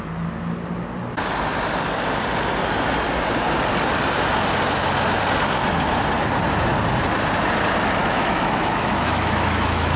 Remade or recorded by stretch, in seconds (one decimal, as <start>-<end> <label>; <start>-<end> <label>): 0.0-8.0 recorded; 8.0-10.0 remade